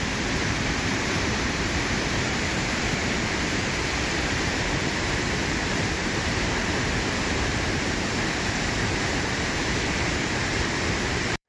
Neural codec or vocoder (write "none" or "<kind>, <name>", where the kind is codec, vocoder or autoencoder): vocoder, BigVGAN v2